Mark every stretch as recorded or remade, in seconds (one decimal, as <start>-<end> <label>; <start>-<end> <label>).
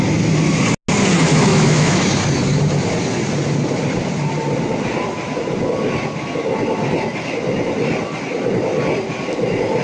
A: 0.0-1.3 recorded; 1.3-2.1 remade; 2.1-9.8 recorded